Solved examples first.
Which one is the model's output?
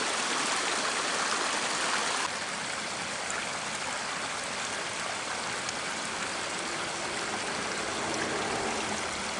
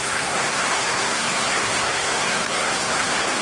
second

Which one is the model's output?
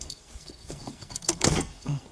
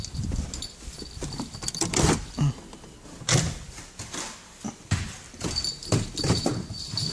first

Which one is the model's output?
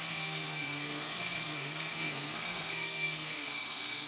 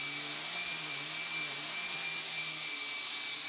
first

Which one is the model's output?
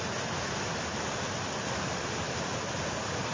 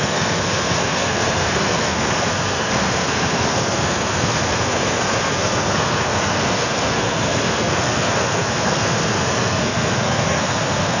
second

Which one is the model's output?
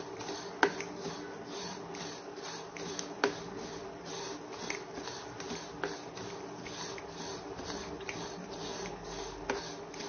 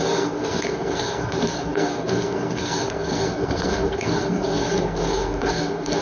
second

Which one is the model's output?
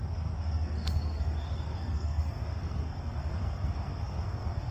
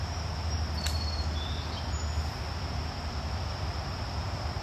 first